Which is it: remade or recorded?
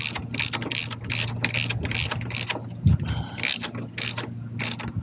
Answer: recorded